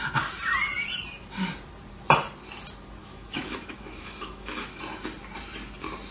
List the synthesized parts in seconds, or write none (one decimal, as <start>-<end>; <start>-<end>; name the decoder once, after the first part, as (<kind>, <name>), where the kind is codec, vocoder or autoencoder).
3.0-4.8 (autoencoder, DAC-VAE)